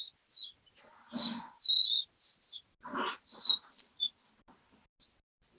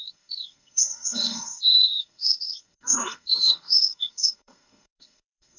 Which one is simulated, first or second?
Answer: second